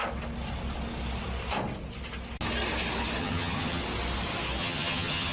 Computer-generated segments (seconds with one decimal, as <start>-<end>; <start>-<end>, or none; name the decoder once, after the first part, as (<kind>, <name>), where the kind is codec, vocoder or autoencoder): 3.2-3.8 (vocoder, HiFi-GAN); 4.6-5.3